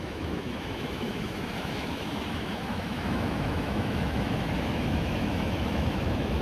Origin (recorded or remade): remade